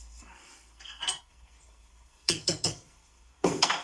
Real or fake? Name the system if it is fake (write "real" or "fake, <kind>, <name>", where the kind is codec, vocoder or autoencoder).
fake, codec, SNAC